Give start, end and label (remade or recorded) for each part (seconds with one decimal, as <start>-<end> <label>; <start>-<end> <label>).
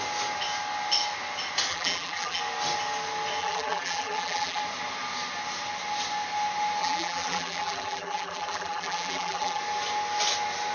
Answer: 0.0-1.7 recorded; 1.7-2.4 remade; 2.4-3.4 recorded; 3.4-4.6 remade; 4.6-6.8 recorded; 6.8-9.6 remade; 9.6-10.7 recorded